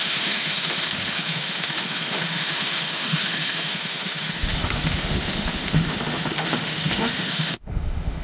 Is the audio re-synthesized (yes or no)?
yes